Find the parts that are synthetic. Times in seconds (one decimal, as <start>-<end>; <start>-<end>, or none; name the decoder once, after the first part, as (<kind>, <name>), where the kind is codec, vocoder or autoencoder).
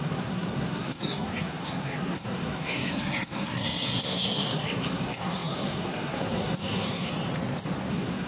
0.0-7.1 (codec, SNAC); 7.9-8.3